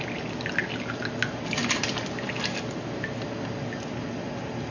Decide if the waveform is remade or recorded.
recorded